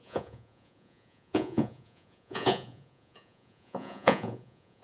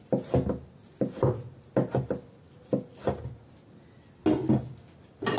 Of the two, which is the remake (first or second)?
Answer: first